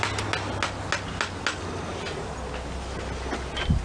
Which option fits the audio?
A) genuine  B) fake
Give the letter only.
A